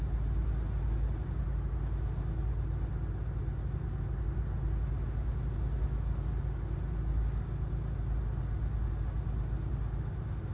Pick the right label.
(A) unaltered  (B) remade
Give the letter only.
A